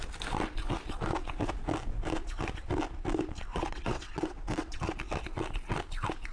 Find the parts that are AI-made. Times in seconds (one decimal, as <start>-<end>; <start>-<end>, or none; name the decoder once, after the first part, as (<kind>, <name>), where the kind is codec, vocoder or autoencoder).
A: 3.5-4.8 (vocoder, WaveNeXt)

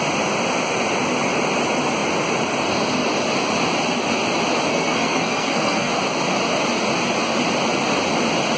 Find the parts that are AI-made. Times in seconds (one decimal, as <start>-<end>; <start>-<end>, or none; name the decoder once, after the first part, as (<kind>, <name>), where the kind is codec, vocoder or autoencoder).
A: 4.7-5.9 (codec, SNAC)

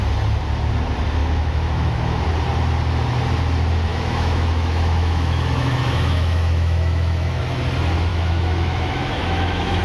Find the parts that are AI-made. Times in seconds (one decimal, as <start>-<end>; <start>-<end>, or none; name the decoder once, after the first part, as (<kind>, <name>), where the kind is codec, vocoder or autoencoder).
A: 1.2-2.2 (autoencoder, DAC-VAE); 3.9-7.4; 8.1-9.8

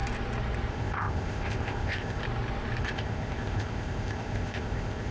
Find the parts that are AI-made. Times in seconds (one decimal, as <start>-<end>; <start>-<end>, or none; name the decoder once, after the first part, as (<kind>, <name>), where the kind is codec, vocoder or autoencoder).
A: 0.7-2.2 (codec, ZipCodec); 2.8-5.1

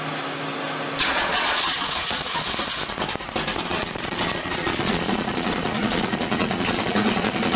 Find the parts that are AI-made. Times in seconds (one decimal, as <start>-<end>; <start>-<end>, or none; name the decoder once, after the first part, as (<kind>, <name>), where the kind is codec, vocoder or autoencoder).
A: 1.1-2.5 (vocoder, Vocos); 3.6-7.6

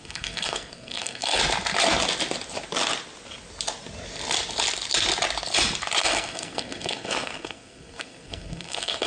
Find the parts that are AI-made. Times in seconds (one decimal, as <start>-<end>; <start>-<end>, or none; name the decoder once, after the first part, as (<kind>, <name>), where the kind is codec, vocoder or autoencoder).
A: 0.0-1.4 (codec, SNAC); 6.0-9.1

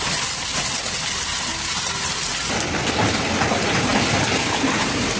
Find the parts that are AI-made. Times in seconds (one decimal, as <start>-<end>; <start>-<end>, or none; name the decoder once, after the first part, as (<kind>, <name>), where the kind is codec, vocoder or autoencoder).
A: none